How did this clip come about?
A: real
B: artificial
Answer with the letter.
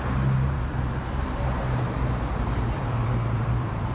B